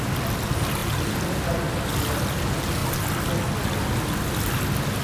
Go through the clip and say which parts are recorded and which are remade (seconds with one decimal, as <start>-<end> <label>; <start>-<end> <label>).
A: 0.0-5.0 recorded